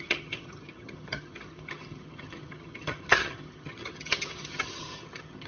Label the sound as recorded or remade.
remade